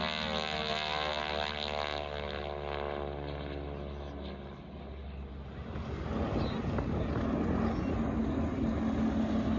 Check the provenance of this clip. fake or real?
real